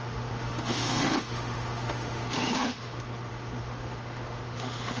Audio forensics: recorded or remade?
remade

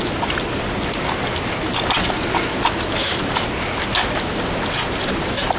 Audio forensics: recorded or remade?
recorded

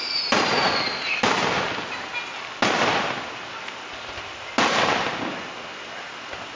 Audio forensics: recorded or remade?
recorded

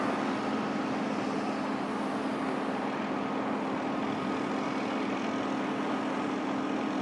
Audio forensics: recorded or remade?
recorded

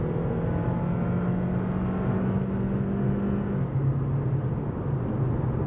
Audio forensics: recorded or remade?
recorded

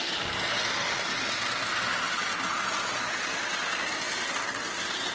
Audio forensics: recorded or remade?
recorded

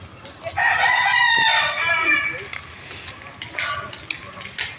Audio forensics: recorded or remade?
recorded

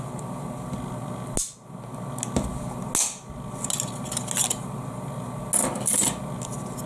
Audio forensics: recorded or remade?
recorded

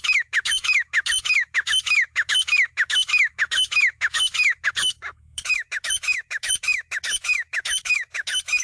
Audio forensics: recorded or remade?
remade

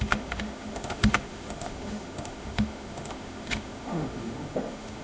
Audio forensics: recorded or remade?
remade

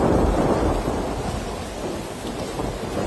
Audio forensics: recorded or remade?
recorded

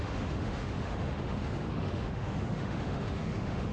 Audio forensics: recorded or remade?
remade